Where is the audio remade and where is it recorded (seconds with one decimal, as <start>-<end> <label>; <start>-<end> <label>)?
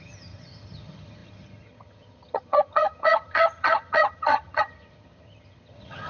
0.0-6.1 remade